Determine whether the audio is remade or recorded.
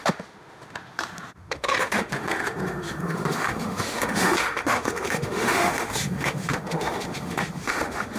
remade